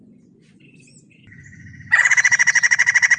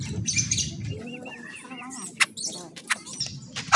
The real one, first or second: second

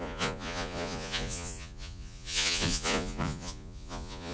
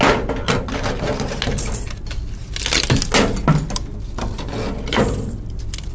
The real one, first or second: second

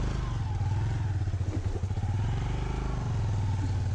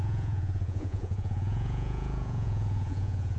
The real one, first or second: first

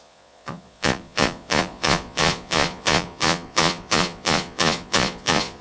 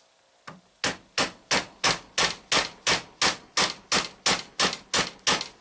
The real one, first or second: second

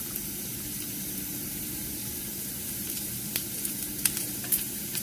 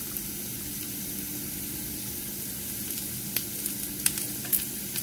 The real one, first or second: second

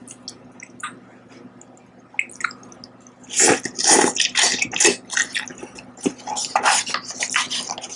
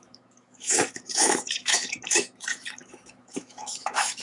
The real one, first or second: first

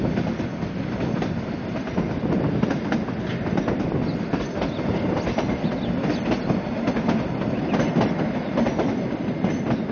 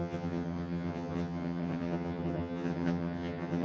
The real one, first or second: first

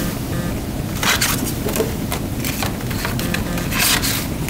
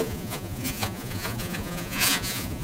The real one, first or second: first